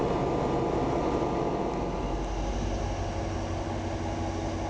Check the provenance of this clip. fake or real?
real